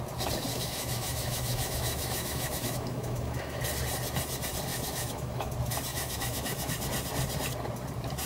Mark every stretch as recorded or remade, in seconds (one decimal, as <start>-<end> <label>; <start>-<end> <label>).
0.0-0.5 recorded; 0.5-3.6 remade; 3.6-4.7 recorded; 4.7-5.5 remade; 5.5-5.9 recorded; 5.9-6.7 remade; 6.7-8.3 recorded